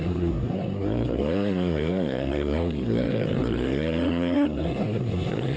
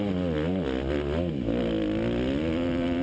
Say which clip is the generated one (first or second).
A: first